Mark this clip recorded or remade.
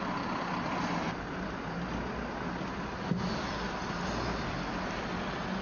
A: recorded